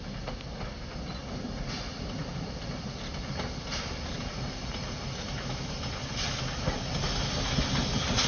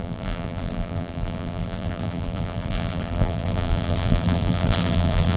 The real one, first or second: first